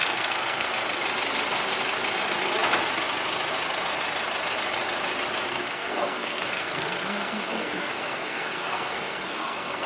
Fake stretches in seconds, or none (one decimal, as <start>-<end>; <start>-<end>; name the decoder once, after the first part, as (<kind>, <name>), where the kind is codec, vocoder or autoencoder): 0.0-0.7 (codec, SNAC); 5.5-9.9